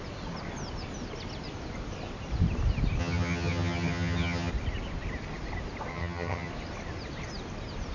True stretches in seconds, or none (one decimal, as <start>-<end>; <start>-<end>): 0.0-3.0; 4.5-5.9; 6.5-7.9